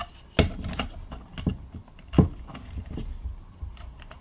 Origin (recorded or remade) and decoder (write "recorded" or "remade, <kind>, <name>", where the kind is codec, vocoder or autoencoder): recorded